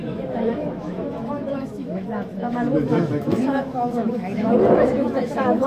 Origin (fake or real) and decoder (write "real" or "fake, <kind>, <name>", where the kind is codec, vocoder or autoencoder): fake, autoencoder, DAC-VAE